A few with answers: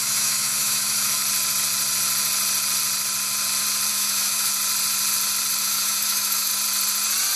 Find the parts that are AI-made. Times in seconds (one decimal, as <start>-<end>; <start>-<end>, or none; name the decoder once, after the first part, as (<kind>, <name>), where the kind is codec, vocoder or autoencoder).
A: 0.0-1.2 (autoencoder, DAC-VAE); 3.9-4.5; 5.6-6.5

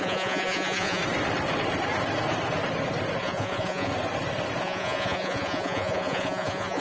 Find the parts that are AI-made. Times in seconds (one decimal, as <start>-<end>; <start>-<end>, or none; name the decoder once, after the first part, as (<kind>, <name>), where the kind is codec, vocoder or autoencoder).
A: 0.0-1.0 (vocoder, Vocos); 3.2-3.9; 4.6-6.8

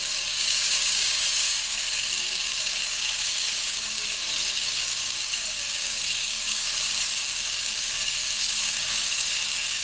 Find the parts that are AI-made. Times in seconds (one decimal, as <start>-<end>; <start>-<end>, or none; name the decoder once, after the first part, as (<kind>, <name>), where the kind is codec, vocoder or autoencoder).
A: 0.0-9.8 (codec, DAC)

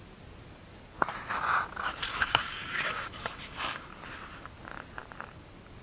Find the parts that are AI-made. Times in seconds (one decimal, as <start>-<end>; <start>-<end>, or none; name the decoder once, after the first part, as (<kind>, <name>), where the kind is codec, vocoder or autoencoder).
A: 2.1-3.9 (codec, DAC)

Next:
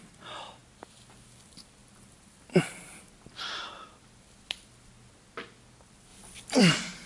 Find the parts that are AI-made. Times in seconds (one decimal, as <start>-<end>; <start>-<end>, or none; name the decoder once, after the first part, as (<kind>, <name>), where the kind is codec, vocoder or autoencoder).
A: 6.1-6.6 (vocoder, BigVGAN v2)

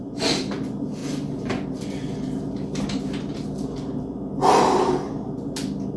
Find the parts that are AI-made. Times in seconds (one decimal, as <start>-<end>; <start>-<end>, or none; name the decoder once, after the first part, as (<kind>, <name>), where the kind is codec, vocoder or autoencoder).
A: none

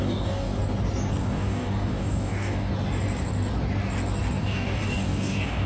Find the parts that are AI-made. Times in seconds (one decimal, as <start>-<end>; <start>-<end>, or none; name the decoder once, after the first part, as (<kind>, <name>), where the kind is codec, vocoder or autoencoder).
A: 0.0-0.6 (codec, DAC); 1.2-2.7; 4.4-5.7

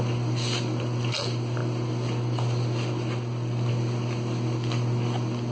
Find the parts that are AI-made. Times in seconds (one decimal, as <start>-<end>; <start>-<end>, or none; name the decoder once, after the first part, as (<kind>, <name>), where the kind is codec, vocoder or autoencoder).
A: none